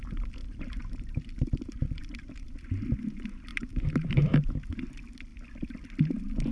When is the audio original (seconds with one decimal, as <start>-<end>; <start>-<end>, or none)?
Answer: 0.0-0.4; 2.0-3.5; 4.5-6.5